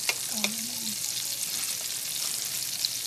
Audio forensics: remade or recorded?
recorded